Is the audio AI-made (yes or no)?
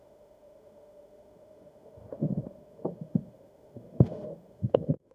yes